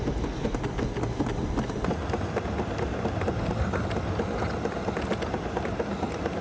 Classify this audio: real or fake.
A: real